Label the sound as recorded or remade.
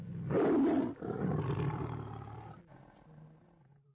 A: recorded